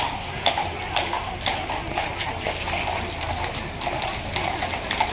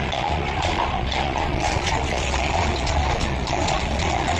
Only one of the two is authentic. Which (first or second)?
first